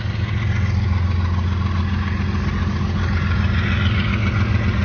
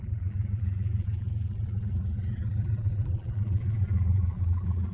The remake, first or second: second